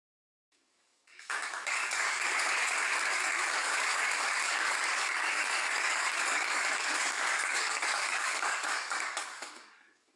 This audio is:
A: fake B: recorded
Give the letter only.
A